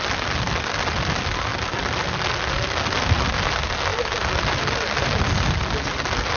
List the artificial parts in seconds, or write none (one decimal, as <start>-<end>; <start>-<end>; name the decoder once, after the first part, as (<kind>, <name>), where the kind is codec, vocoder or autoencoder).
none